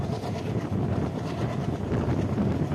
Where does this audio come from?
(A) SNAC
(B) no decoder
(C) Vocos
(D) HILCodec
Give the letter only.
B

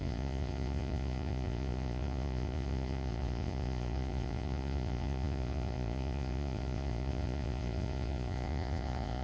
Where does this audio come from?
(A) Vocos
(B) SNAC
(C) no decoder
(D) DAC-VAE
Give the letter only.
A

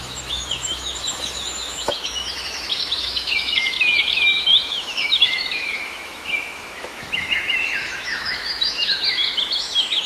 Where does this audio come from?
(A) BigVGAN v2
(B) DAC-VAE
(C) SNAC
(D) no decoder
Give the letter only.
B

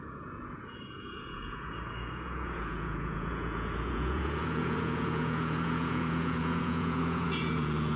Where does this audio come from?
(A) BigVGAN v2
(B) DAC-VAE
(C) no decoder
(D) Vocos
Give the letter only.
D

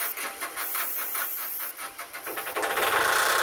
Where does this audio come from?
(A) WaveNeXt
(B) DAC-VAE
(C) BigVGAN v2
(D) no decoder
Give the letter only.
D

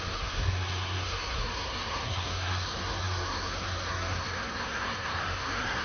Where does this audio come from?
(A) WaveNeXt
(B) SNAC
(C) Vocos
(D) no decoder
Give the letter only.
B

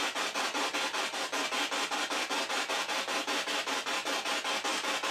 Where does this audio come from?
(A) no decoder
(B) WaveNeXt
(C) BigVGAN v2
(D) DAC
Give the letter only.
A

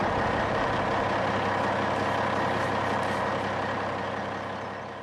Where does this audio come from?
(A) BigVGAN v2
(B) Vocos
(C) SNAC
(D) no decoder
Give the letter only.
D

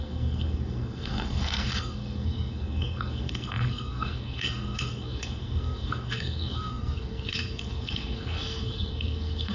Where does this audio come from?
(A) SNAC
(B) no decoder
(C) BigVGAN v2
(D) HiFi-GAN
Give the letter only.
A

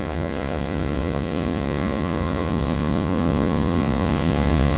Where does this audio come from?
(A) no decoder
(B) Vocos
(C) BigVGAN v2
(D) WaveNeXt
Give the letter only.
B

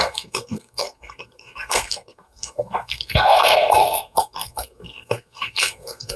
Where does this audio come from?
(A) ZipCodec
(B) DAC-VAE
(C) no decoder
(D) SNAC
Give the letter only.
D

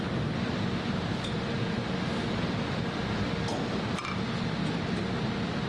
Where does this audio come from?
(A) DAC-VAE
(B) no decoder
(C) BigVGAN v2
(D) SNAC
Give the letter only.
B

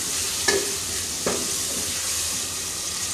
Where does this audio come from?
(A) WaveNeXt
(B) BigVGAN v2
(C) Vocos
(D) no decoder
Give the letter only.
B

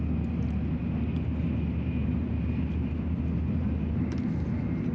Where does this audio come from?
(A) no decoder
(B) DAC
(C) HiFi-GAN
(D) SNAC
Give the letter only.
A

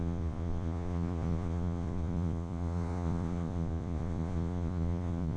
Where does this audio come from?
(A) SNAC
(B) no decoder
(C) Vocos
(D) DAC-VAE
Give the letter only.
C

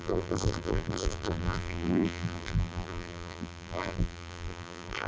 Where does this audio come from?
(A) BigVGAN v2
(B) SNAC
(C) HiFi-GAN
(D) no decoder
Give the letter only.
A